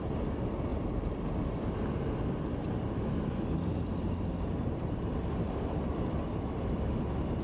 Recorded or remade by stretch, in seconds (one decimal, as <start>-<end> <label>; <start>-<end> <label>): 0.0-0.7 recorded; 0.7-2.1 remade; 2.1-2.6 recorded; 2.6-7.0 remade; 7.0-7.4 recorded